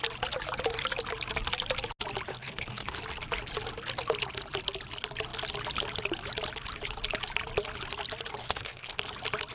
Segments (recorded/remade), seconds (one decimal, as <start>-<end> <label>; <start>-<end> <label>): 0.0-2.3 recorded; 2.3-3.0 remade; 3.0-8.4 recorded; 8.4-9.0 remade; 9.0-9.5 recorded

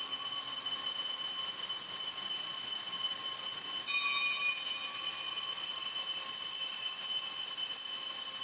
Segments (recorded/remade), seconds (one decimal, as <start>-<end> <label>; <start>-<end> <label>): 0.0-8.4 recorded

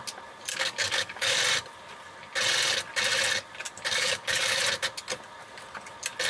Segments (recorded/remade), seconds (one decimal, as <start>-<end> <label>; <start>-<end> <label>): 0.0-0.5 recorded; 0.5-1.4 remade; 1.4-3.9 recorded; 3.9-4.6 remade; 4.6-6.3 recorded

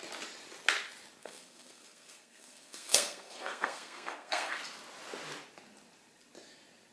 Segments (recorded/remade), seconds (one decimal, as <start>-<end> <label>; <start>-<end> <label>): 0.0-1.2 recorded; 1.2-4.6 remade; 4.6-6.9 recorded

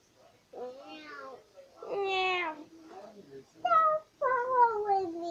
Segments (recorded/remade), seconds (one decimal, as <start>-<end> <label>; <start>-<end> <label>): 0.0-5.3 recorded

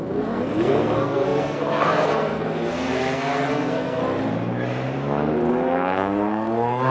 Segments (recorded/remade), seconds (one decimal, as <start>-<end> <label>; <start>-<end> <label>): 0.0-4.0 remade; 4.0-5.5 recorded; 5.5-6.9 remade

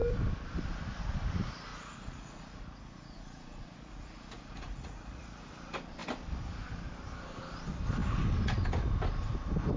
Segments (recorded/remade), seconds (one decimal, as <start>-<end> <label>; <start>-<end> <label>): 0.0-1.7 recorded; 1.7-5.5 remade; 5.5-9.8 recorded